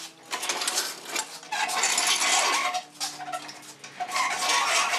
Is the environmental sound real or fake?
real